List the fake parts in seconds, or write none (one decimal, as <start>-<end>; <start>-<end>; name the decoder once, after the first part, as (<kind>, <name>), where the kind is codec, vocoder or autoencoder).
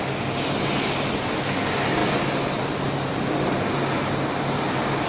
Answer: none